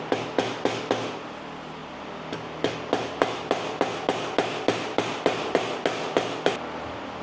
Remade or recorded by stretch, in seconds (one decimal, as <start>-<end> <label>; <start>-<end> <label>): 0.0-7.2 recorded